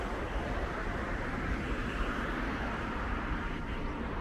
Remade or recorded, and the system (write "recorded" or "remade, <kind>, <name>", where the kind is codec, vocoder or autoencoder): remade, vocoder, BigVGAN v2